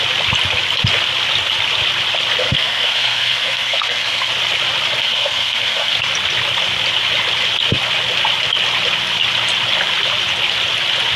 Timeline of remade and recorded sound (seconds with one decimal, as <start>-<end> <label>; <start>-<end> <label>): 0.0-2.4 recorded; 2.4-4.3 remade; 4.3-5.0 recorded; 5.0-6.0 remade; 6.0-11.2 recorded